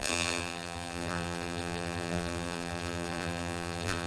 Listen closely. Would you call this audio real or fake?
fake